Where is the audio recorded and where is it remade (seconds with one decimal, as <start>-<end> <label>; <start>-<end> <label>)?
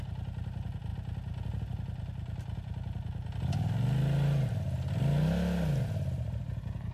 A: 0.0-6.9 recorded